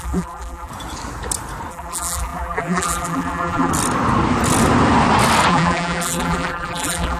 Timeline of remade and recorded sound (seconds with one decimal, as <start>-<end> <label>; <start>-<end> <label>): 0.0-0.7 remade; 0.7-1.7 recorded; 1.7-3.7 remade; 3.7-5.5 recorded; 5.5-7.2 remade